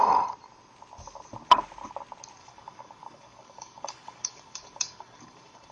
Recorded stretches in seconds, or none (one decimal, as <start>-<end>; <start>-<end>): 0.0-2.4